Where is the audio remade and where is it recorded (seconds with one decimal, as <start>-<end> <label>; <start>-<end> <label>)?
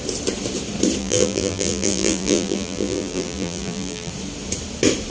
0.0-1.0 recorded; 1.0-4.1 remade; 4.1-5.1 recorded